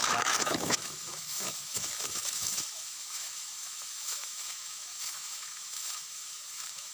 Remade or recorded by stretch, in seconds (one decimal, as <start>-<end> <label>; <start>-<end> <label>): 0.0-6.9 remade